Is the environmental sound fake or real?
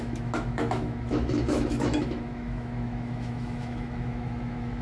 fake